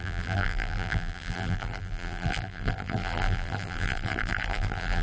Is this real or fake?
fake